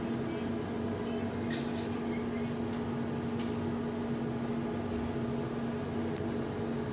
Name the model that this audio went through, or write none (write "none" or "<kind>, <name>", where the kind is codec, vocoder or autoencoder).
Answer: none